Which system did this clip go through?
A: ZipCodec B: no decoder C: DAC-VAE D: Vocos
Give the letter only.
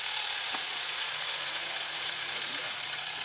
D